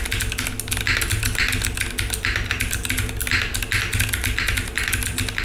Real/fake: real